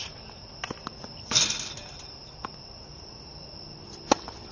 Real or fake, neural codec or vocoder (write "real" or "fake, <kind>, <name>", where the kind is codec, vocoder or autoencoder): real